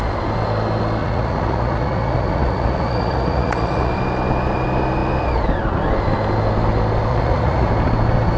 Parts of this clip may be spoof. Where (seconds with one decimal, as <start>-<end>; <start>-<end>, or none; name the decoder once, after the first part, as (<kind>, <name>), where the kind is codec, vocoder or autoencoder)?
1.0-3.9 (vocoder, Vocos); 7.1-7.7